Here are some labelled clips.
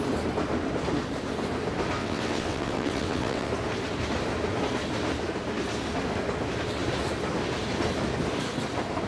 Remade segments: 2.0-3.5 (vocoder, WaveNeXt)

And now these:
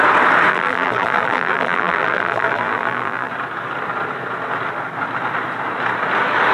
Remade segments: 0.5-3.3 (vocoder, BigVGAN v2)

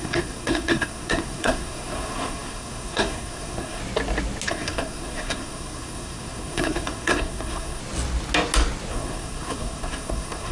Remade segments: 0.0-3.8 (codec, SNAC); 4.5-7.8; 8.9-10.5